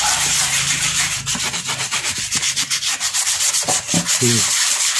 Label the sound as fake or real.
fake